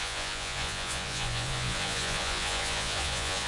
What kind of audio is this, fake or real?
fake